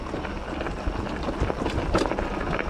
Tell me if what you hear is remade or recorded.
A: recorded